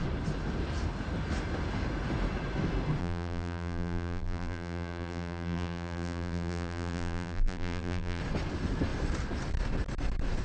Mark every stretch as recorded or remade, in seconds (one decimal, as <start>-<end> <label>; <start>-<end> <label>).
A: 0.0-3.0 recorded; 3.0-8.2 remade; 8.2-10.4 recorded